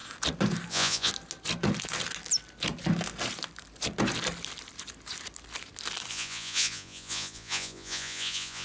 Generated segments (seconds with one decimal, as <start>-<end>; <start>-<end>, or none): 0.7-1.1; 6.1-8.6